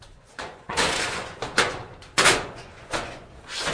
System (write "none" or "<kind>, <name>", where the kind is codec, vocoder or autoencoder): vocoder, Vocos